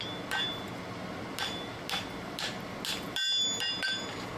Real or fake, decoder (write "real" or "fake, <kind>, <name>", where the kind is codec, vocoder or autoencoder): real